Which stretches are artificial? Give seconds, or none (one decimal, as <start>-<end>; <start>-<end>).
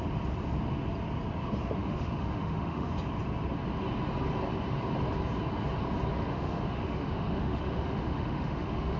1.8-2.9; 6.1-9.0